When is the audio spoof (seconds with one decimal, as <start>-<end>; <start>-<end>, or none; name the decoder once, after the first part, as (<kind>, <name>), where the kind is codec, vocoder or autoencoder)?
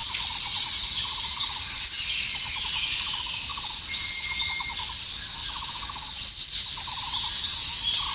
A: 0.0-2.6 (vocoder, Vocos)